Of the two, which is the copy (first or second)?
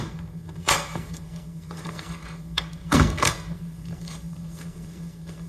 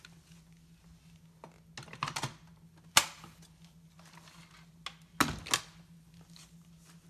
first